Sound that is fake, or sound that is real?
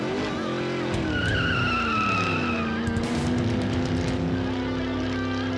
real